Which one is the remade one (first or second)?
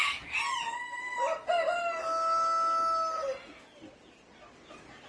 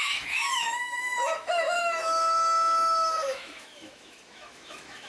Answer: second